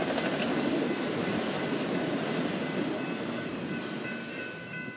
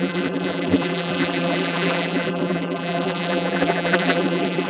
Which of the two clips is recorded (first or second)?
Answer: first